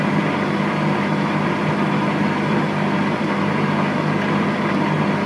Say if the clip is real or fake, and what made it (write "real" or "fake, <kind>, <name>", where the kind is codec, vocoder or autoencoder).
real